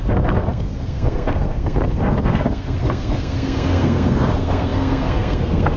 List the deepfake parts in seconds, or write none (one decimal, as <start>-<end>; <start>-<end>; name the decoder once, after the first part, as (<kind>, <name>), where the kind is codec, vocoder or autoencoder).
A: 0.0-5.8 (codec, SNAC)